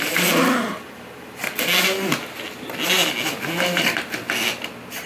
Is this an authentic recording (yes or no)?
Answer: yes